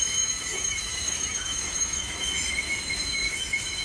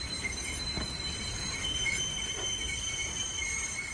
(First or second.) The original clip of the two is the second